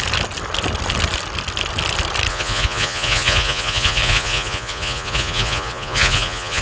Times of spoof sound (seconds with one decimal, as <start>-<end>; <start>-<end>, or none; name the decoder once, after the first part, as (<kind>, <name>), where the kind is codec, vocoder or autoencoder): 2.3-6.6 (vocoder, Vocos)